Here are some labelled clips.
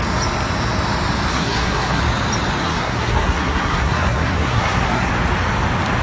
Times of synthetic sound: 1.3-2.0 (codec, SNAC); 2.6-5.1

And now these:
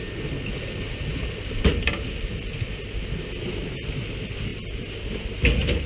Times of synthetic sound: none

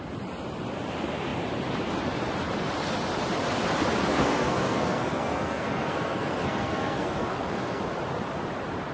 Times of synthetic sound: 4.1-7.8 (codec, SNAC)